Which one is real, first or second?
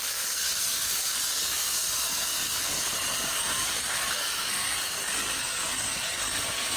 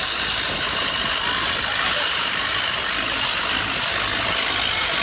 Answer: second